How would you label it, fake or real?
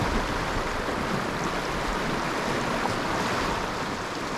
real